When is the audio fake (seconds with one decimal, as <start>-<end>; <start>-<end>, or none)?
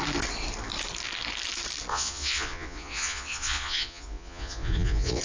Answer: 1.9-5.2